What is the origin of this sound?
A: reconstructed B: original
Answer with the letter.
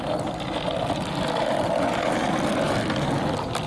A